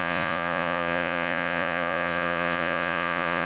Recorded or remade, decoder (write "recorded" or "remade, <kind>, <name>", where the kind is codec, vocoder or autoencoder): remade, vocoder, Vocos